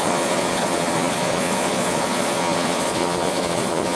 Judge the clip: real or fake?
fake